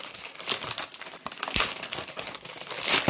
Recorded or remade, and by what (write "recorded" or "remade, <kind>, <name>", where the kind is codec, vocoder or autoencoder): recorded